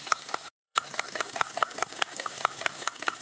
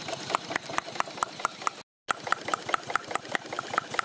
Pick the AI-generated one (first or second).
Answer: first